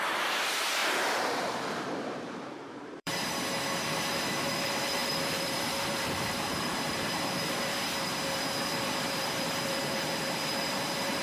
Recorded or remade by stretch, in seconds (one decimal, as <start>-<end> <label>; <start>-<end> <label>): 0.0-3.1 remade; 3.1-4.1 recorded; 4.1-11.2 remade